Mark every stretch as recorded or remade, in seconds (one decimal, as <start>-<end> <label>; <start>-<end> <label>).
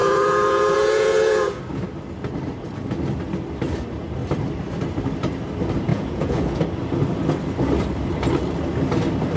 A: 0.0-1.6 remade; 1.6-5.9 recorded; 5.9-6.6 remade; 6.6-9.4 recorded